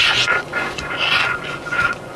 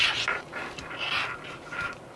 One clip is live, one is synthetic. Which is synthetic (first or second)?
first